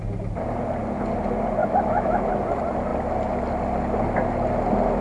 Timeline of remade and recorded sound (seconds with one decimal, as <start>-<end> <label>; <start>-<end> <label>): 0.0-1.6 recorded; 1.6-2.3 remade; 2.3-5.0 recorded